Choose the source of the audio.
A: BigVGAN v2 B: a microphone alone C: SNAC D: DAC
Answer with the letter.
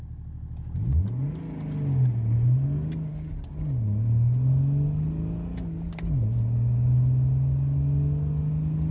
B